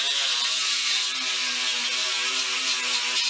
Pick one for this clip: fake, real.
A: real